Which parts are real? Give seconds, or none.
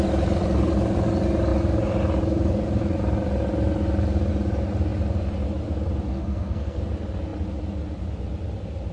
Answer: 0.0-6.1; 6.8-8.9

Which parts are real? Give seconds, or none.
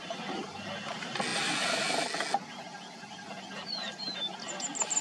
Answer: 0.0-5.0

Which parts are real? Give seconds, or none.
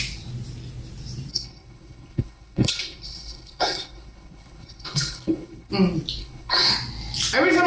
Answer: 0.0-1.3; 5.7-6.2; 6.7-7.7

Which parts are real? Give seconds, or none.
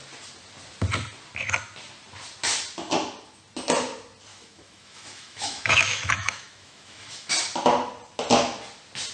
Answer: 0.0-4.3; 7.3-9.1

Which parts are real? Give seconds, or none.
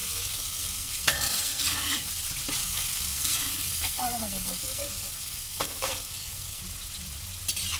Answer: 2.1-2.6; 6.6-7.8